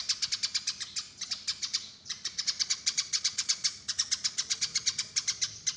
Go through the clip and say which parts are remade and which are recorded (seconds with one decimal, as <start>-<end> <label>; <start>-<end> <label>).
0.0-1.5 recorded; 1.5-5.0 remade; 5.0-5.8 recorded

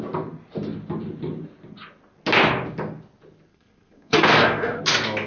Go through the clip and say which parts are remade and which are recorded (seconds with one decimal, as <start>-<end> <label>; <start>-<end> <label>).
0.0-3.5 recorded; 3.5-4.8 remade; 4.8-5.3 recorded

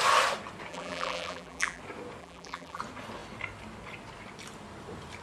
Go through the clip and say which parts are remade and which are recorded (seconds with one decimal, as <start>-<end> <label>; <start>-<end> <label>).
0.0-0.7 recorded; 0.7-1.8 remade; 1.8-2.2 recorded; 2.2-2.8 remade; 2.8-5.2 recorded